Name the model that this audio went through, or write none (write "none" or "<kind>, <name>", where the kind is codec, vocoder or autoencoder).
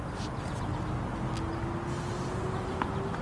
none